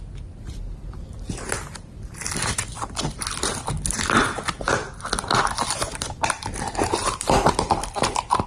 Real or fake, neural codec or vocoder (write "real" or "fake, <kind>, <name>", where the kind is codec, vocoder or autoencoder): real